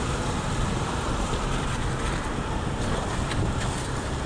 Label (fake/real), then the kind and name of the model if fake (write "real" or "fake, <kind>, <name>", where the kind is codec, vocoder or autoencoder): real